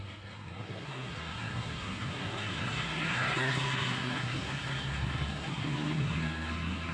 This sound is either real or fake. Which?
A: fake